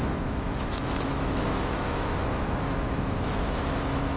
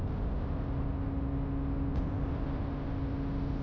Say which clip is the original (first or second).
second